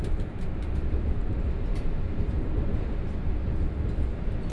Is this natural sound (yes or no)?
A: yes